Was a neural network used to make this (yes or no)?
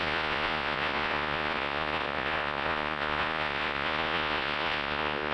yes